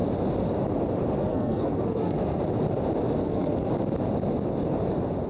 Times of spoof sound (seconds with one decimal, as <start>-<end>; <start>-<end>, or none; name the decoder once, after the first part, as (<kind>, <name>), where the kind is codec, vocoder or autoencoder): 1.2-2.4 (codec, SNAC); 3.2-3.7